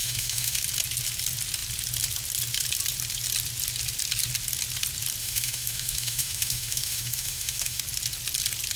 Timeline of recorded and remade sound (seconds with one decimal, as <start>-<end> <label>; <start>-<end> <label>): 0.0-0.6 remade; 0.6-5.2 recorded; 5.2-7.8 remade; 7.8-8.8 recorded